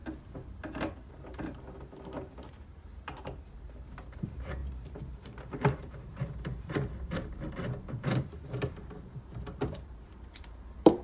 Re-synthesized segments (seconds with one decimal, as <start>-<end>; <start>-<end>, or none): 1.1-11.0